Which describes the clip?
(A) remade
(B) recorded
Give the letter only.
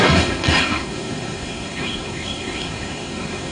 A